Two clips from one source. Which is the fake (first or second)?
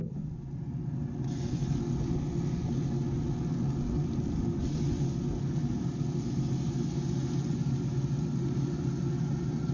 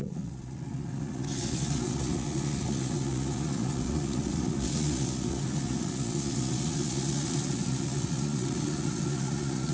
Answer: second